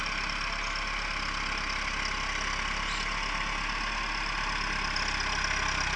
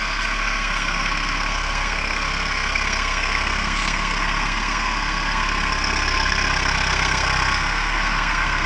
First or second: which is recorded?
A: first